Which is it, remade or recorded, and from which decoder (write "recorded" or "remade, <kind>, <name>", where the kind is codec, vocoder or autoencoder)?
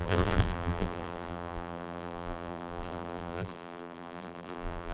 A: remade, vocoder, BigVGAN v2